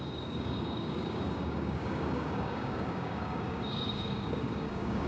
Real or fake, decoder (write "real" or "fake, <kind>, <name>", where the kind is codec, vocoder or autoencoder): fake, codec, DAC